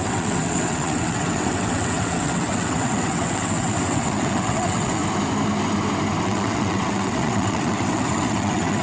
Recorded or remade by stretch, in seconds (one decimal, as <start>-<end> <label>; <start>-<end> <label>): 0.0-5.0 remade; 5.0-6.2 recorded; 6.2-8.8 remade